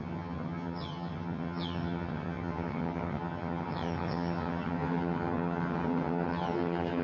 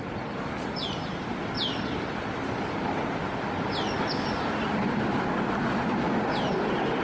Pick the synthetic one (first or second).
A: first